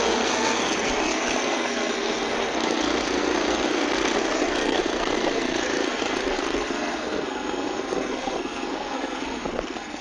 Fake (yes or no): yes